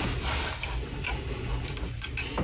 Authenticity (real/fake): real